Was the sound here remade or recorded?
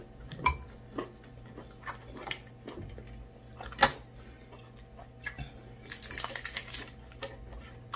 recorded